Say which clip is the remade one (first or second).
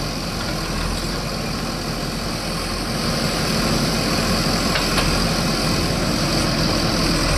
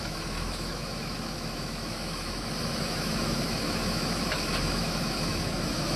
second